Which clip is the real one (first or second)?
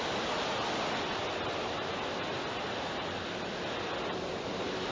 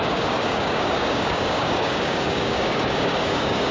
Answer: first